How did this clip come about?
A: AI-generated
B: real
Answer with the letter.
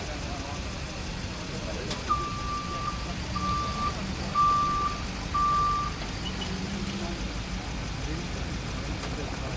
B